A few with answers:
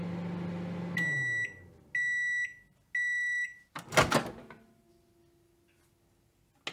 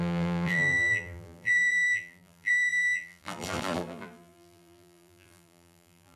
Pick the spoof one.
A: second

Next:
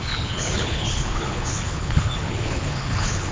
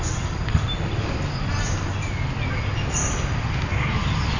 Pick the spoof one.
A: first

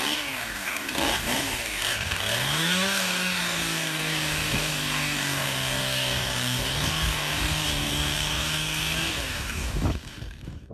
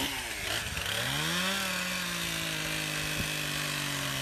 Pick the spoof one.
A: first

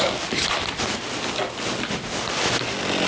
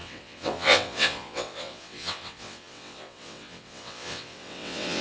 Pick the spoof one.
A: second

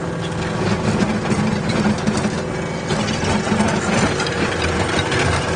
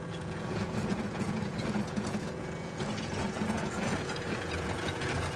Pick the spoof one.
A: second